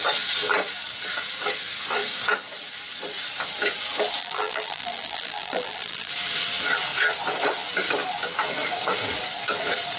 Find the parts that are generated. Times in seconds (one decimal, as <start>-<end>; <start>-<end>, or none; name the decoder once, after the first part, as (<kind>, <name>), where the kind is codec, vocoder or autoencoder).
4.2-6.1 (vocoder, BigVGAN v2)